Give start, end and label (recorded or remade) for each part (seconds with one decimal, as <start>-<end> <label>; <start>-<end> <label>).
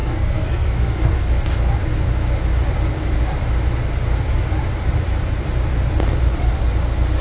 0.0-1.3 remade; 1.3-7.2 recorded